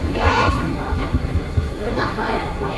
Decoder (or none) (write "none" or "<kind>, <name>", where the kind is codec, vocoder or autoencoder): codec, SNAC